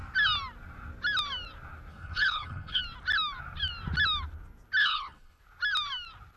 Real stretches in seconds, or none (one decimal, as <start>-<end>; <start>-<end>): 0.0-1.9; 2.8-4.8; 5.4-6.4